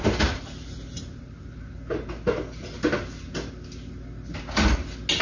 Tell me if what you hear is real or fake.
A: real